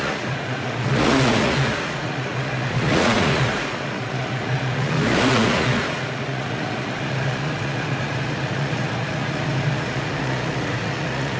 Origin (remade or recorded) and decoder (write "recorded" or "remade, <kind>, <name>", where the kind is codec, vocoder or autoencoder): remade, vocoder, Vocos